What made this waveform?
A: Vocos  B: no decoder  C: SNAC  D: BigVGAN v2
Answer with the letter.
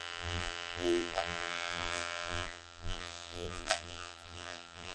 D